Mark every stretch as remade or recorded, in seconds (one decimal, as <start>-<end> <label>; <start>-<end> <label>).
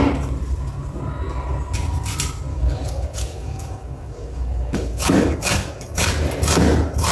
0.0-2.5 recorded; 2.5-6.1 remade; 6.1-7.1 recorded